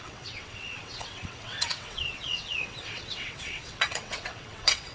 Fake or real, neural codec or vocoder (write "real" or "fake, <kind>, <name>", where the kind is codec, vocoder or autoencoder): fake, vocoder, WaveNeXt